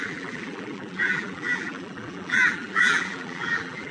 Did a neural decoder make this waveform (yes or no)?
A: yes